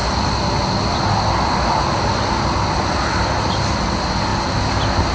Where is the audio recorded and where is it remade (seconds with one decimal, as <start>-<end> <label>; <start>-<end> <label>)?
0.0-5.1 recorded